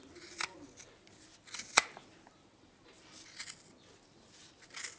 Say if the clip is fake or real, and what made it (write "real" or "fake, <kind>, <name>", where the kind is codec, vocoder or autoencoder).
real